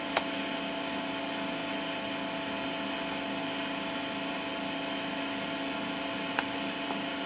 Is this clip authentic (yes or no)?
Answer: yes